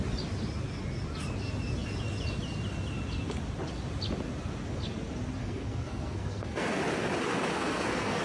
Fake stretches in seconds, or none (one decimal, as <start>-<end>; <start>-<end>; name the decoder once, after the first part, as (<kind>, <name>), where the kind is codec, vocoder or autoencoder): 5.4-6.8 (codec, SNAC); 7.5-8.2